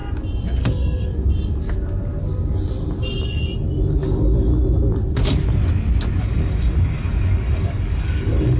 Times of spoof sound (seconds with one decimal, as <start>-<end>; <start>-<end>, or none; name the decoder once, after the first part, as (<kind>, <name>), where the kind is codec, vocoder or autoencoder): 0.6-1.1 (codec, DAC); 3.9-4.5; 6.2-8.6